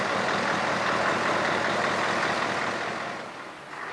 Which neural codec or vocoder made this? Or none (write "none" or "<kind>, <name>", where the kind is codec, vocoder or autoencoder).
none